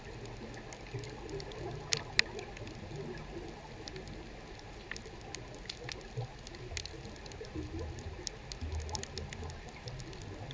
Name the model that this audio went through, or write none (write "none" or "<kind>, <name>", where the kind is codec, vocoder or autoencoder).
none